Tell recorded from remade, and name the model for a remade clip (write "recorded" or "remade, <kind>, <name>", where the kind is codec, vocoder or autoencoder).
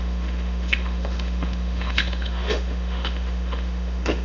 remade, autoencoder, DAC-VAE